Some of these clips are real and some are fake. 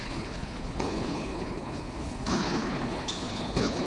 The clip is fake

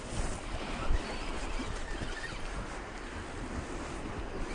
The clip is real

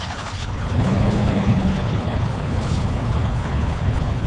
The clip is fake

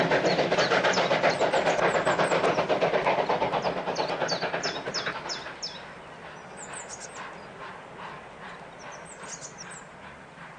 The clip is real